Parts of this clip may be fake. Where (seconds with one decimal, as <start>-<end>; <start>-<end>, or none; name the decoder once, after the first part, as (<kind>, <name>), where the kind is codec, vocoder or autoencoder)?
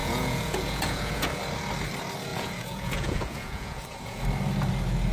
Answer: 0.0-1.4 (vocoder, Vocos); 2.3-4.2